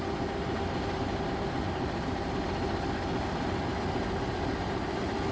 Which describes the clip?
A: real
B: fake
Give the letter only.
A